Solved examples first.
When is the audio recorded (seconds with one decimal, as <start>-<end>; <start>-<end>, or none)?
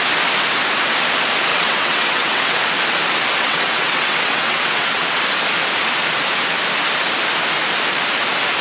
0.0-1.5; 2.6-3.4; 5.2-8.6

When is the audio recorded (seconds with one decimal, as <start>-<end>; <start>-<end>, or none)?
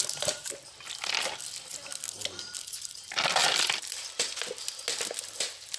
1.0-3.4; 4.4-5.8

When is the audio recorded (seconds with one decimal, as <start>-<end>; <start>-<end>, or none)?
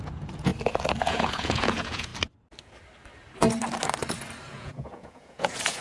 0.5-1.0; 2.1-4.5